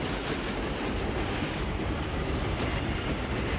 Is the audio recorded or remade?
recorded